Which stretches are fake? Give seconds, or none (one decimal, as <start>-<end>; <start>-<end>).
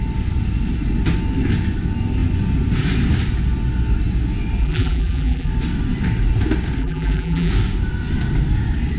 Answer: 4.6-5.5; 6.8-7.5